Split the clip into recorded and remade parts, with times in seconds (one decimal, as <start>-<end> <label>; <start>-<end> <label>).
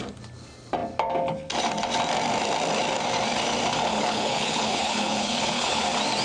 0.0-3.9 recorded; 3.9-5.8 remade; 5.8-6.2 recorded